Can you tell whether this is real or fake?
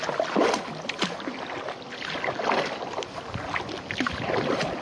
real